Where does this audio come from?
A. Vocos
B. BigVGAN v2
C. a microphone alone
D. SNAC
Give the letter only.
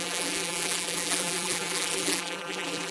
B